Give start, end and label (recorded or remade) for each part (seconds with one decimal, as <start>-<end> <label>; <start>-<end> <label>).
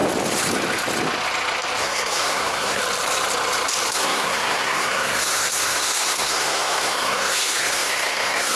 0.0-1.8 recorded; 1.8-2.8 remade; 2.8-3.9 recorded; 3.9-8.6 remade